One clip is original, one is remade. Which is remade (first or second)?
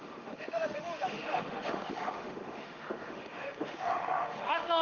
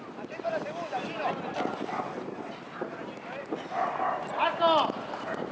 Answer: first